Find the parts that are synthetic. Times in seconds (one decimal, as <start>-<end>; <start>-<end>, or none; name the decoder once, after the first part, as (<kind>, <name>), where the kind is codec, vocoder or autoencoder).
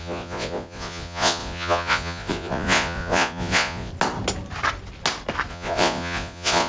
0.0-3.9 (vocoder, Vocos); 5.5-6.7